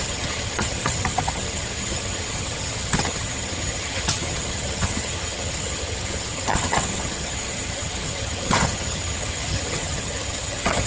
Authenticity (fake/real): fake